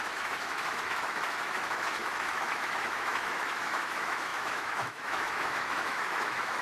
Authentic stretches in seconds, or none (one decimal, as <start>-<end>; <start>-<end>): none